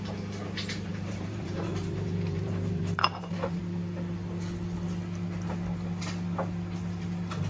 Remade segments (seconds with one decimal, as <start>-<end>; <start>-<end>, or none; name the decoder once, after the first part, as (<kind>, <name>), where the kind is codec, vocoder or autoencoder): 0.9-3.6 (vocoder, BigVGAN v2)